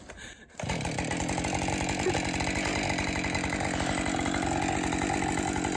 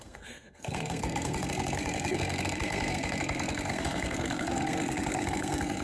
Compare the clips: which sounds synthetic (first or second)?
second